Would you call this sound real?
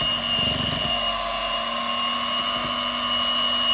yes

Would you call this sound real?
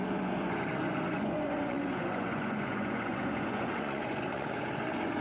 no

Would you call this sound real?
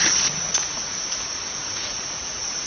no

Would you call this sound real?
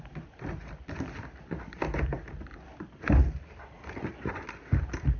yes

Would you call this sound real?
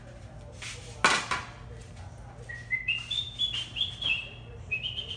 yes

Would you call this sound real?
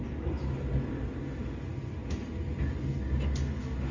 yes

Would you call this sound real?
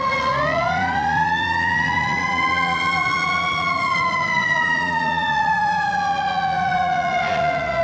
no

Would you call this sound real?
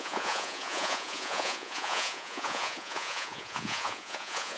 no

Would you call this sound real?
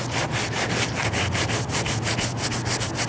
yes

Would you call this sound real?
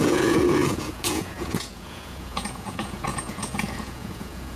no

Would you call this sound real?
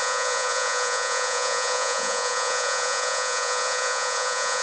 no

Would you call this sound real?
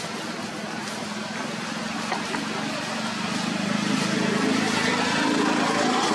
yes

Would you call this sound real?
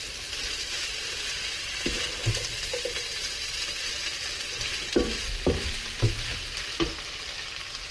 yes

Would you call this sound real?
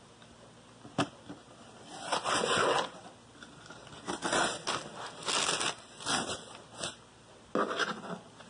yes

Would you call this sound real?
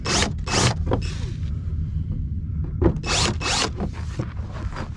yes